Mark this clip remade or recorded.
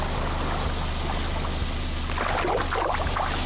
recorded